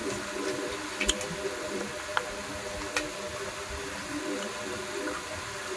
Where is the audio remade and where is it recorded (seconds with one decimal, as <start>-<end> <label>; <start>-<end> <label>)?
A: 0.0-5.8 recorded